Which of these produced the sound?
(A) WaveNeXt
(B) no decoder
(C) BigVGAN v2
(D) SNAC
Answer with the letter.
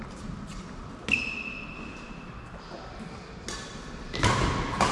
B